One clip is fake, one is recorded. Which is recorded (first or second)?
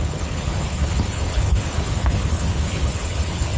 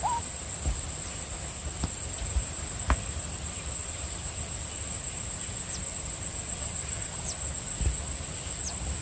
second